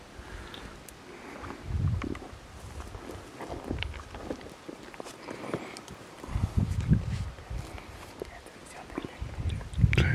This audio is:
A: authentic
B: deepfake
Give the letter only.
A